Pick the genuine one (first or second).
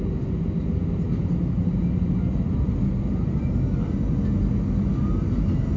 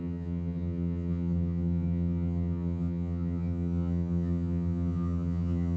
first